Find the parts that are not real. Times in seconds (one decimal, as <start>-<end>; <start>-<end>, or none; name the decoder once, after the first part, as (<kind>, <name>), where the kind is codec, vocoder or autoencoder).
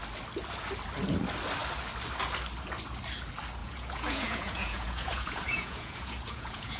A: 3.6-6.8 (vocoder, Vocos)